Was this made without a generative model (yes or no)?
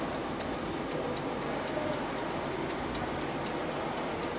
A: yes